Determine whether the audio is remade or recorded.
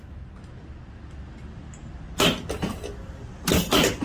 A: recorded